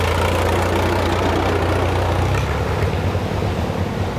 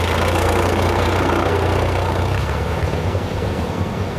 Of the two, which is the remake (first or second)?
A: second